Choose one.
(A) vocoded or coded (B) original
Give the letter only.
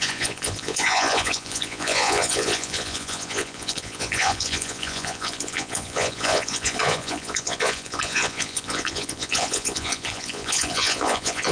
A